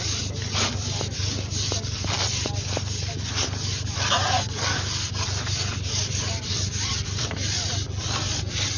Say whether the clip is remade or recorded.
recorded